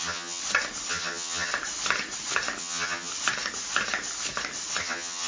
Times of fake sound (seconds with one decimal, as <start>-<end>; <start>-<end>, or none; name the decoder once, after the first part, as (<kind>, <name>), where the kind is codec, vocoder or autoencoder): 0.0-0.4 (vocoder, HiFi-GAN); 0.9-1.5; 2.6-3.1; 4.8-5.3